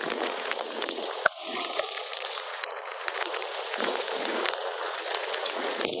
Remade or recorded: remade